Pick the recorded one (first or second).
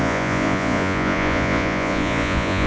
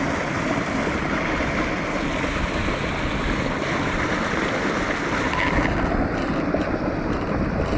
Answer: second